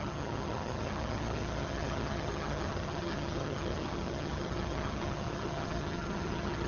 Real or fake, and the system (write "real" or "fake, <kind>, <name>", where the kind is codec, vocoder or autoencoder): fake, vocoder, HiFi-GAN